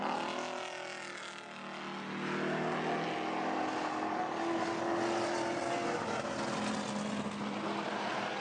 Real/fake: real